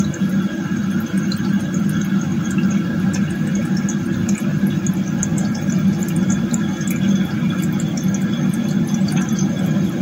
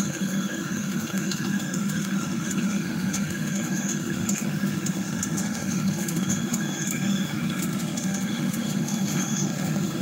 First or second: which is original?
first